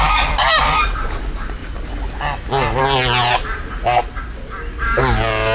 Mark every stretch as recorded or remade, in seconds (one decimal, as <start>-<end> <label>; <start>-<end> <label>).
0.0-5.5 recorded